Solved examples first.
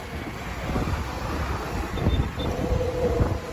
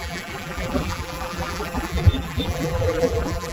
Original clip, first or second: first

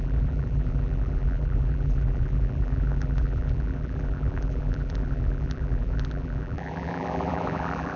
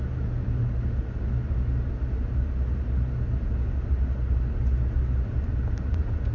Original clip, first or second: second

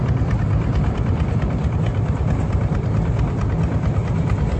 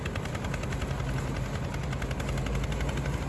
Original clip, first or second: second